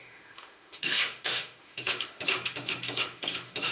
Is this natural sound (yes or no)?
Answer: no